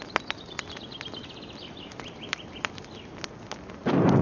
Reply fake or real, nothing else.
real